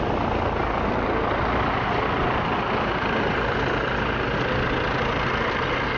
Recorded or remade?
recorded